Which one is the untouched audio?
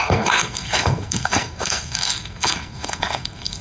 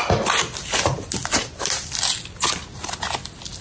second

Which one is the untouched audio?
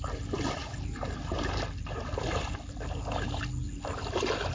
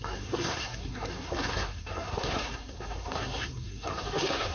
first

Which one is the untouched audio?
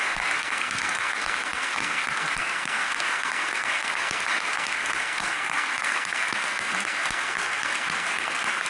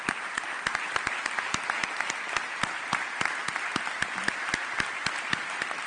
second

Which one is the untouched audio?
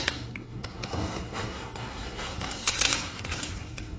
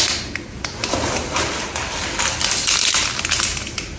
second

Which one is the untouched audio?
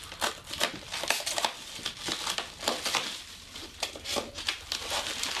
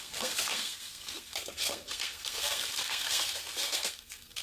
first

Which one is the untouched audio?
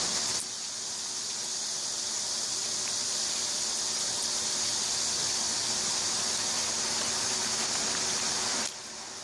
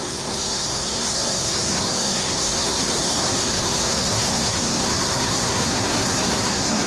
first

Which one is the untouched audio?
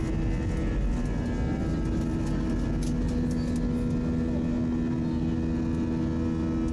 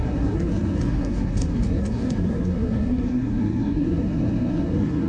first